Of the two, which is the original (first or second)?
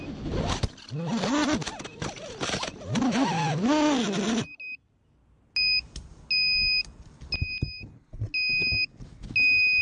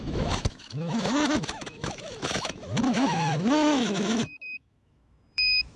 first